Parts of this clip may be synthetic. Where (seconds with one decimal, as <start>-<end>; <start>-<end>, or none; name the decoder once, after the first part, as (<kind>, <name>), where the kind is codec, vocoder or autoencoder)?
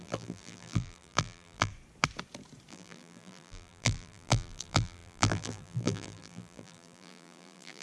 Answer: 0.0-1.7 (vocoder, BigVGAN v2); 2.7-7.8